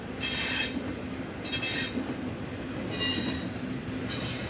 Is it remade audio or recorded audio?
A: recorded